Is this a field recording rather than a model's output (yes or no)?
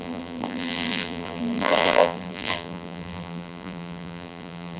no